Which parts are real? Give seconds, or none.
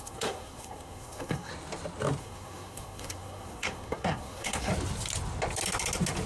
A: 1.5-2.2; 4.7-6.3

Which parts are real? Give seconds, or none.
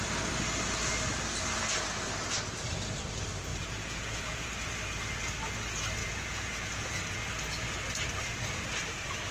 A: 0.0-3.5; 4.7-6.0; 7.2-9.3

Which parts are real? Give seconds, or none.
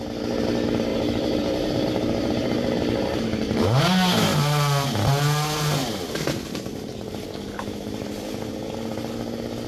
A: 0.0-0.9; 3.8-5.8; 8.1-9.7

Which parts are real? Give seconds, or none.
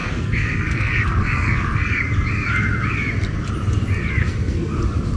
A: 2.0-4.2; 4.8-5.2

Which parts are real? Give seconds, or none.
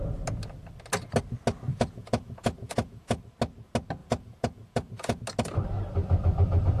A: 0.0-1.7; 3.2-4.0; 5.2-6.8